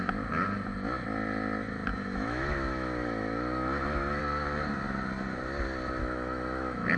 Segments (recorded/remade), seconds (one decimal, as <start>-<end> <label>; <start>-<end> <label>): 0.0-1.9 recorded; 1.9-4.2 remade; 4.2-6.0 recorded; 6.0-7.0 remade